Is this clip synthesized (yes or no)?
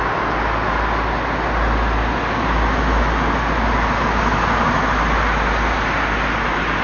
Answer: no